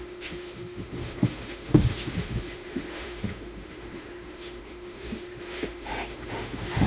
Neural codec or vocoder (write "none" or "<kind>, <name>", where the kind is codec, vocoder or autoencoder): autoencoder, DAC-VAE